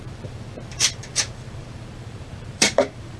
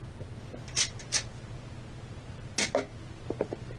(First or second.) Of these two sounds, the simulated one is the first